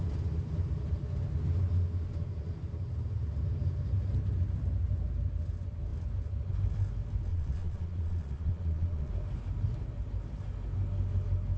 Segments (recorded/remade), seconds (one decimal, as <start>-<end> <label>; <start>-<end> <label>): 0.0-7.3 recorded; 7.3-9.1 remade; 9.1-11.6 recorded